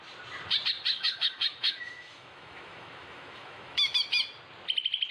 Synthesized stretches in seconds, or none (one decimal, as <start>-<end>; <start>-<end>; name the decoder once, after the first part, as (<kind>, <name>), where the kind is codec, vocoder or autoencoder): 0.9-4.0 (autoencoder, DAC-VAE)